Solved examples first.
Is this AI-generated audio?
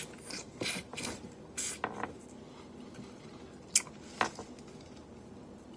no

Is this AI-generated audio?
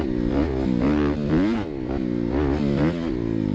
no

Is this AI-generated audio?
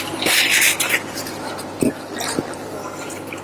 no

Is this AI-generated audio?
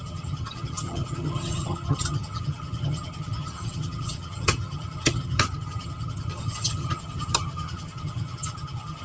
yes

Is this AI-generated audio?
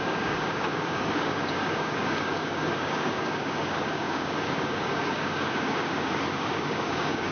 yes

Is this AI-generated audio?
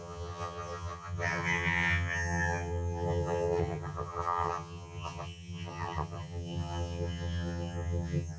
yes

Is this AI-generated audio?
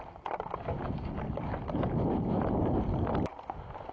no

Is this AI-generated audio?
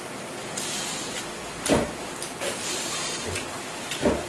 yes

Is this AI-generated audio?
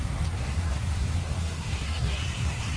yes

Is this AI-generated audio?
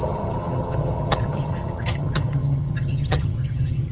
yes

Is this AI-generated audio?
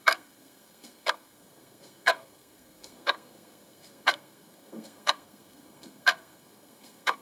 yes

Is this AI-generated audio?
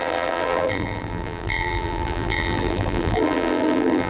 yes